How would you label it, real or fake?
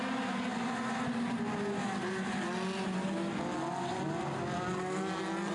real